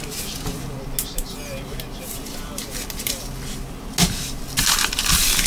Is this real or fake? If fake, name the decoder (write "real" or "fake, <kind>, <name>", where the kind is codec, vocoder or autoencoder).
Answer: real